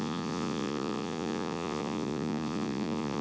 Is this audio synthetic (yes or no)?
yes